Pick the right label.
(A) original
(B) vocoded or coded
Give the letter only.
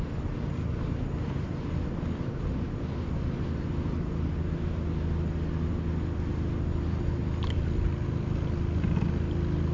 A